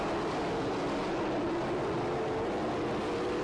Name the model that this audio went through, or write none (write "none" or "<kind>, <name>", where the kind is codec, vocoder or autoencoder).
none